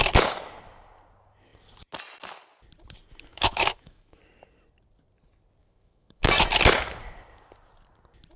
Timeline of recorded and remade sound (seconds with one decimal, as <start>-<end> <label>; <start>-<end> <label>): 0.0-3.3 recorded; 3.3-4.2 remade; 4.2-5.6 recorded; 5.6-6.3 remade; 6.3-8.4 recorded